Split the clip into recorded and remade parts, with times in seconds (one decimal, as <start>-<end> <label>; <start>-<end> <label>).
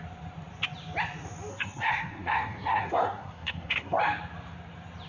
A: 0.0-1.5 recorded; 1.5-4.0 remade; 4.0-5.1 recorded